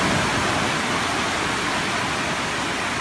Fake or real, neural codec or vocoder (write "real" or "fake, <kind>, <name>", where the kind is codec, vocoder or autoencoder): real